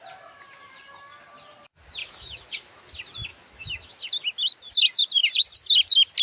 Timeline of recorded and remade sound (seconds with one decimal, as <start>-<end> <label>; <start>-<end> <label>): 0.0-2.0 recorded; 2.0-2.9 remade; 2.9-3.3 recorded; 3.3-4.0 remade; 4.0-6.2 recorded